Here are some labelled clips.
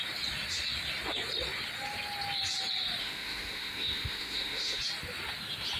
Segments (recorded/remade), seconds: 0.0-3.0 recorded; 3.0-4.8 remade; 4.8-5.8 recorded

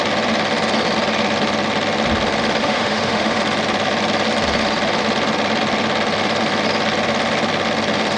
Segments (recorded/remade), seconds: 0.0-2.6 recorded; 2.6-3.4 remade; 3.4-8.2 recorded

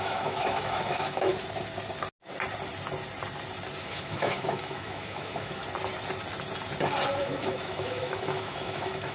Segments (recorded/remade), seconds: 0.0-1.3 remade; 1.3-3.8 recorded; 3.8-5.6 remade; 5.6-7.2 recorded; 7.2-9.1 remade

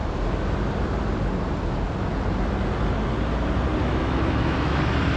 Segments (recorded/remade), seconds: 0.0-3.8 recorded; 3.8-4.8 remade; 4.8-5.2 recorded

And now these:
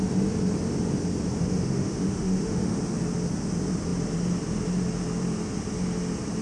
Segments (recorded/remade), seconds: 0.0-1.4 recorded; 1.4-2.8 remade; 2.8-6.4 recorded

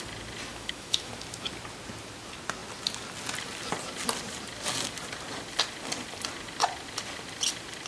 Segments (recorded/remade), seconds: 0.0-0.5 recorded; 0.5-1.1 remade; 1.1-7.9 recorded

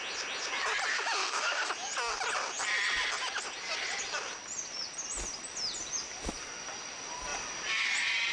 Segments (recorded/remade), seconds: 0.0-0.9 recorded; 0.9-1.7 remade; 1.7-8.3 recorded

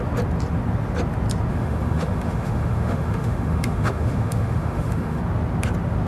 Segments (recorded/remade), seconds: 0.0-1.5 recorded; 1.5-5.2 remade; 5.2-6.1 recorded